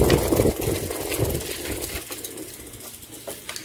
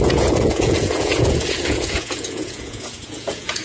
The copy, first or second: second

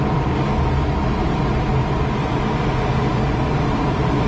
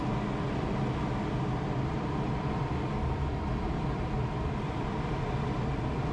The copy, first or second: second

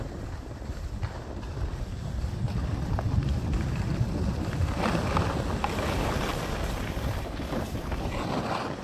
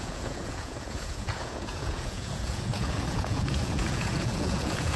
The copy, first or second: second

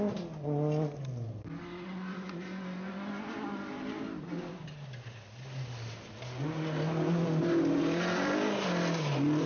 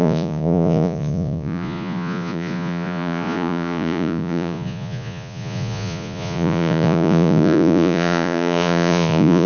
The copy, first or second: second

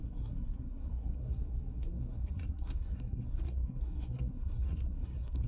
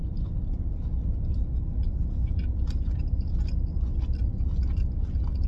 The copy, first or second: first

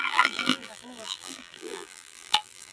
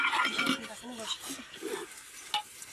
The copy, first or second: first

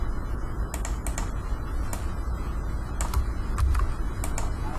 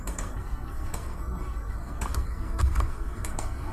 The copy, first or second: second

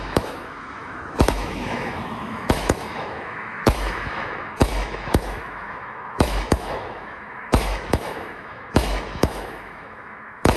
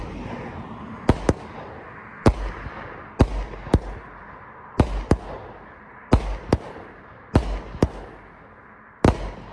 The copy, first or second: first